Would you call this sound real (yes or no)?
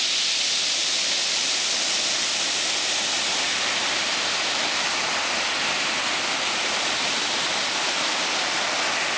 yes